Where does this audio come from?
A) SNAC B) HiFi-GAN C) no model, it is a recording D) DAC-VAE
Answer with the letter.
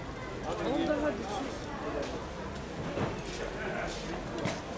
C